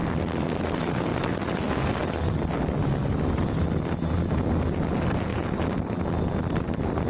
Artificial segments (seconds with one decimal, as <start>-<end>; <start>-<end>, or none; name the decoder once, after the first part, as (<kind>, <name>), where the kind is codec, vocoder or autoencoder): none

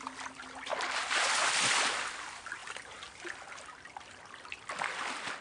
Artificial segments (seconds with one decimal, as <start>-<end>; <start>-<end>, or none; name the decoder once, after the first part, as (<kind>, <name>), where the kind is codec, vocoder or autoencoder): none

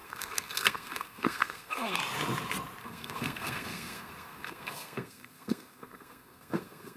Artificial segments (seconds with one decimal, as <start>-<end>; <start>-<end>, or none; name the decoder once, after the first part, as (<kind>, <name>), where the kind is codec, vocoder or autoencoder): 0.0-2.0 (codec, SNAC); 2.8-7.0